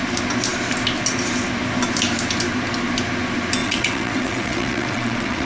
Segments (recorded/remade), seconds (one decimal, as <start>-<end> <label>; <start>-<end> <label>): 0.0-3.6 recorded; 3.6-5.5 remade